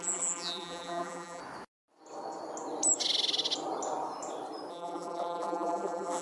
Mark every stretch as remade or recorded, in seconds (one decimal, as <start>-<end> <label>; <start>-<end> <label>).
0.0-1.4 remade; 1.4-4.7 recorded; 4.7-6.2 remade